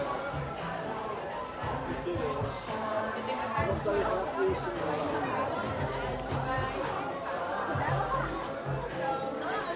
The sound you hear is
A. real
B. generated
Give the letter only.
A